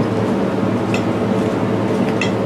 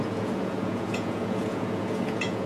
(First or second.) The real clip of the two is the first